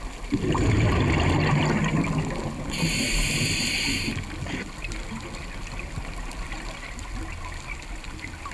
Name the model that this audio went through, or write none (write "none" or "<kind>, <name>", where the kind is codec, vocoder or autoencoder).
none